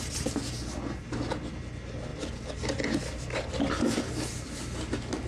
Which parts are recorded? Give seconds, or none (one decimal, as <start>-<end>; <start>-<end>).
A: 0.0-5.3